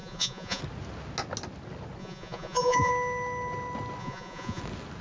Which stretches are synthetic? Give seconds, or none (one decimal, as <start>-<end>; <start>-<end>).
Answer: 0.0-0.6; 2.0-2.9; 4.0-4.6